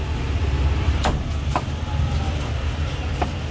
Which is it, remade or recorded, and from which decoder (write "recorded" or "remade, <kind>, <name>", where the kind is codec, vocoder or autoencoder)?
recorded